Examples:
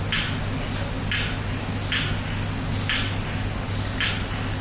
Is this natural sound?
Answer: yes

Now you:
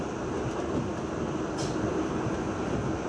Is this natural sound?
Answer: yes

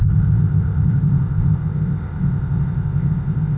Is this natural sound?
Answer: no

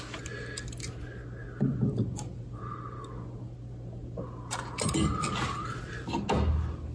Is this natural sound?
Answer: yes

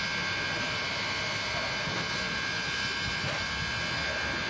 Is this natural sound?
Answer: yes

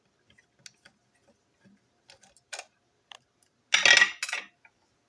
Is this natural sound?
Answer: yes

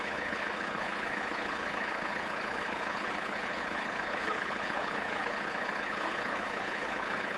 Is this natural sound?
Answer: no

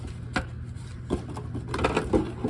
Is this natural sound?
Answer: yes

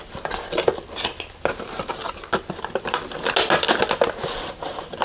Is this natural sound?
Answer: yes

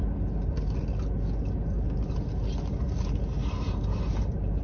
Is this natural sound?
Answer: yes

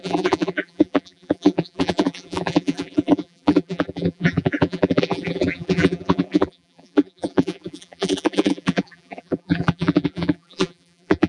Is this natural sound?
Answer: no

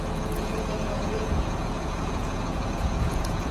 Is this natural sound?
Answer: no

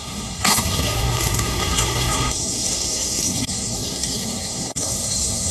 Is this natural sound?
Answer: no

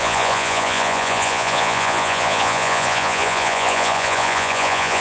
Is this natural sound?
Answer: no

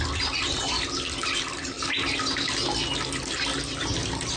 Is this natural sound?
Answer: yes